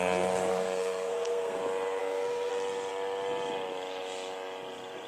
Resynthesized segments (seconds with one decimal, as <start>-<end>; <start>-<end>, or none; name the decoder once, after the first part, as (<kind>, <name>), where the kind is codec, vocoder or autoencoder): 0.5-1.6 (codec, SNAC); 2.0-2.5